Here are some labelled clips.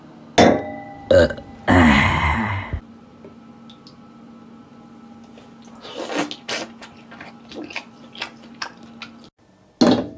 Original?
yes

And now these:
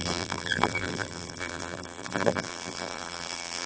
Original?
no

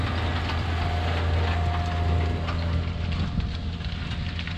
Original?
yes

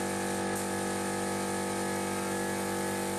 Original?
yes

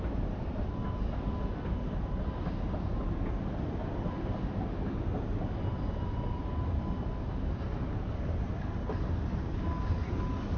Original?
yes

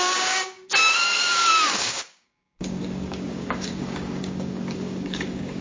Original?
no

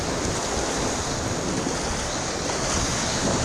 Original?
yes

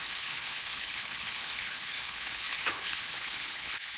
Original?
no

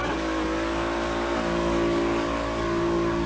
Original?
no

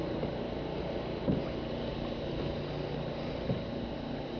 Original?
yes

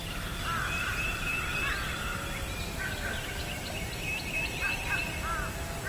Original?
yes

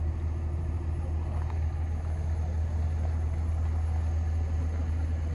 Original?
yes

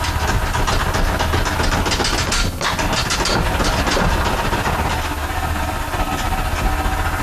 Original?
yes